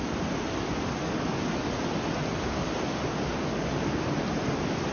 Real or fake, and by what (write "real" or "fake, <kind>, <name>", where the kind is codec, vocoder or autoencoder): real